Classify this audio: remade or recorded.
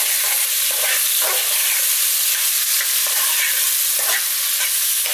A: recorded